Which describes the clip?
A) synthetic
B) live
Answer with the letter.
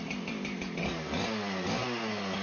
B